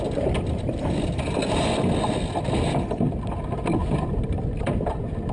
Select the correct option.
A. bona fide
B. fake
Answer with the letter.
A